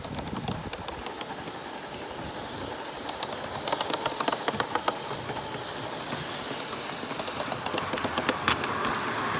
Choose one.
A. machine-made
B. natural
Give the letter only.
B